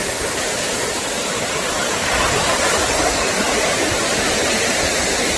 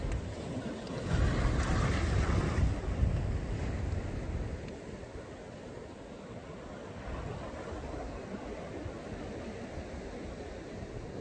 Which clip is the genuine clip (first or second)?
second